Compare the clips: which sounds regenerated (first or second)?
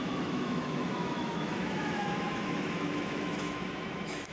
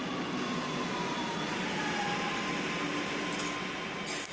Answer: first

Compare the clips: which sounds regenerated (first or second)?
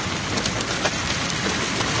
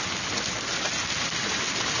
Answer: first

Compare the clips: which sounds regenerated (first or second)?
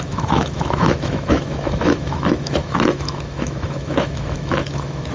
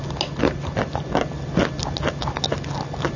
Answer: first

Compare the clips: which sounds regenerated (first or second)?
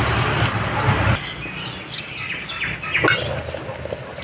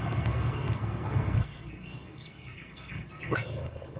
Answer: second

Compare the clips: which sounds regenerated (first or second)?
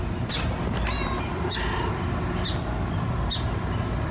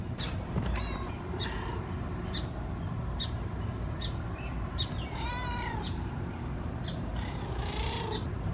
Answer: second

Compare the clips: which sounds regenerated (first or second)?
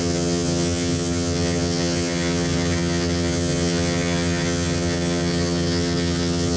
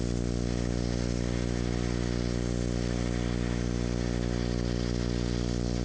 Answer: first